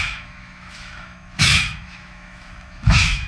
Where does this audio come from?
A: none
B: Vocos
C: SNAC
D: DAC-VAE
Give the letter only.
D